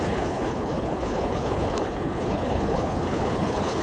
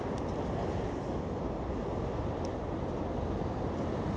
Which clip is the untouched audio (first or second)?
second